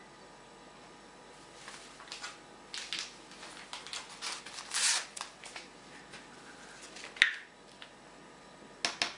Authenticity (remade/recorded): recorded